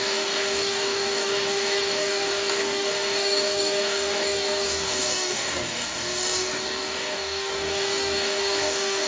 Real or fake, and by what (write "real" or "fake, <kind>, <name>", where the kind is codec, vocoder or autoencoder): fake, codec, DAC